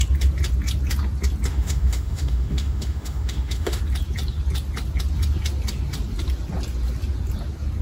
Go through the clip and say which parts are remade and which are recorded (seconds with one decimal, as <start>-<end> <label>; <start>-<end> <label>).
0.0-1.5 recorded; 1.5-3.8 remade; 3.8-7.8 recorded